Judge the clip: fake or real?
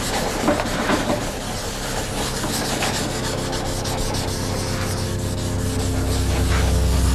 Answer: real